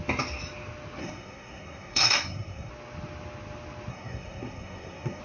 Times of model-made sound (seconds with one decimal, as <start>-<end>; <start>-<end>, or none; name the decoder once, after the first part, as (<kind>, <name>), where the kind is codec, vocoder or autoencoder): 1.0-2.7 (codec, SNAC); 3.9-5.2